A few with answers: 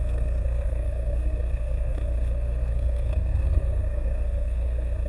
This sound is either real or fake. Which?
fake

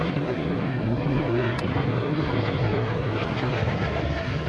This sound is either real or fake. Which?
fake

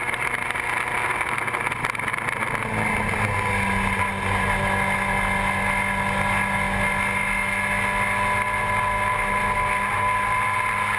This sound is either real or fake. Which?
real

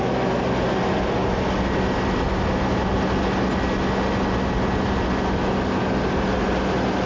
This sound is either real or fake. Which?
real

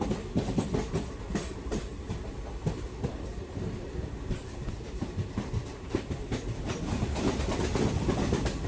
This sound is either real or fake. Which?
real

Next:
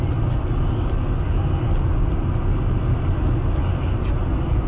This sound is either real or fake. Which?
real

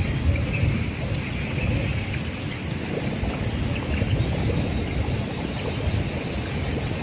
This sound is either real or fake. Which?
real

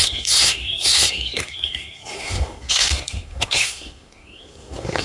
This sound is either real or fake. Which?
fake